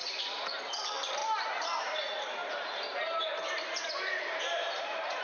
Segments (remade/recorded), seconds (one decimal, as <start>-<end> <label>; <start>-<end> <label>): 0.0-0.7 recorded; 0.7-1.2 remade; 1.2-1.8 recorded; 1.8-5.2 remade

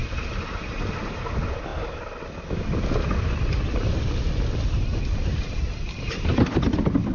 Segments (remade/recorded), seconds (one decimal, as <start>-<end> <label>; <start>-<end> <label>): 0.0-7.1 recorded

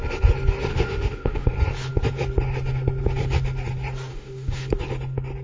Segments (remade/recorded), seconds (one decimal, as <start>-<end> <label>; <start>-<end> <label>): 0.0-0.7 recorded; 0.7-1.5 remade; 1.5-4.1 recorded; 4.1-4.7 remade; 4.7-5.4 recorded

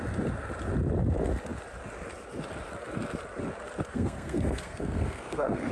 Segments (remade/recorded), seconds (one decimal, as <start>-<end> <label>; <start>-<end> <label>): 0.0-3.9 recorded; 3.9-5.7 remade

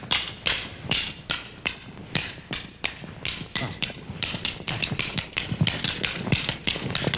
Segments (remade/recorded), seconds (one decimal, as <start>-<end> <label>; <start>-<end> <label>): 0.0-0.7 recorded; 0.7-1.2 remade; 1.2-2.2 recorded; 2.2-5.1 remade; 5.1-7.2 recorded